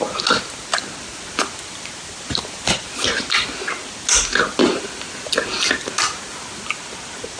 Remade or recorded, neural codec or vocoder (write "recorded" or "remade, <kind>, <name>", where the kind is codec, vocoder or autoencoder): recorded